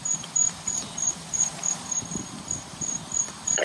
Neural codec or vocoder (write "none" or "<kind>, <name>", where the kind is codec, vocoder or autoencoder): vocoder, BigVGAN v2